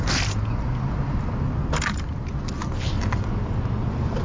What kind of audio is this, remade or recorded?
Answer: recorded